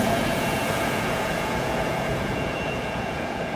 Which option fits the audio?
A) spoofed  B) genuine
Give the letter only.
A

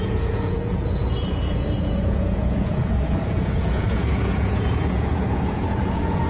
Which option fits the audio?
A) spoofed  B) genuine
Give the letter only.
A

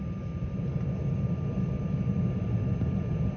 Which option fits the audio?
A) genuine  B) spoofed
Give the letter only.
A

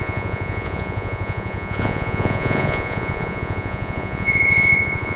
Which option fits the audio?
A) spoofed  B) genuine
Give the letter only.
A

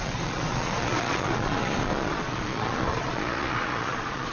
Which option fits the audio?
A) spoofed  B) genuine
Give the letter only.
A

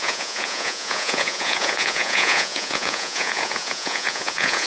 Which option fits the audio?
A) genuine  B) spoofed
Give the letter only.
B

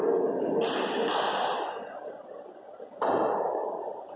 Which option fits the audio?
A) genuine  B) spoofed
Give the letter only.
A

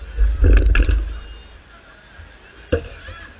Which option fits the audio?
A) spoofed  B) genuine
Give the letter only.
B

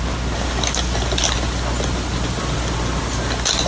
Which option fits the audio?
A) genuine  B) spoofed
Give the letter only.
A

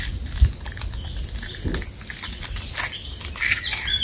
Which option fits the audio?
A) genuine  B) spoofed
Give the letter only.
A